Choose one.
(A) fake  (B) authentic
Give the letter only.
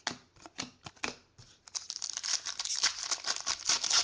B